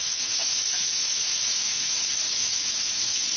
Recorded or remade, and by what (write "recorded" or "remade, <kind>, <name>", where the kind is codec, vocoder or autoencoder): remade, autoencoder, DAC-VAE